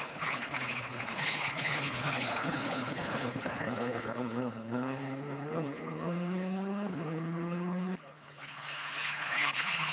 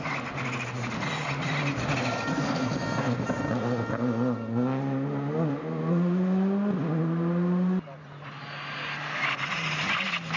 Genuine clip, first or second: second